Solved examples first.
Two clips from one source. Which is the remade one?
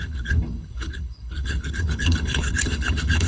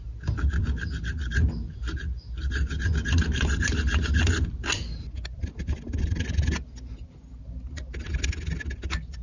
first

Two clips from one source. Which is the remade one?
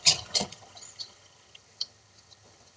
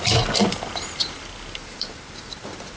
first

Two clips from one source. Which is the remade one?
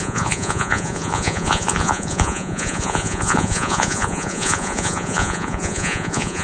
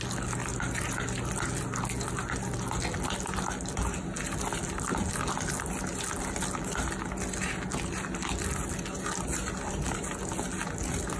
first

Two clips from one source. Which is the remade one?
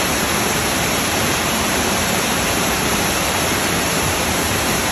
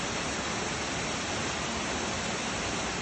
first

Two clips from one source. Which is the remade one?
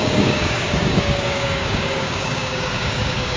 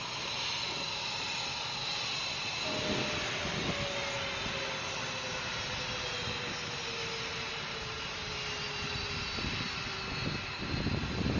first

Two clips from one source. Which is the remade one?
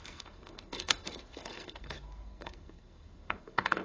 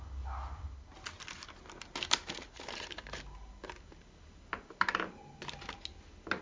first